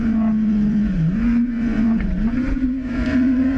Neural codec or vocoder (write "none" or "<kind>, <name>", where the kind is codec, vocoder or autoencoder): vocoder, Vocos